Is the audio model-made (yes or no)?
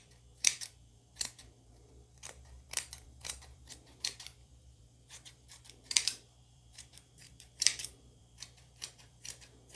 yes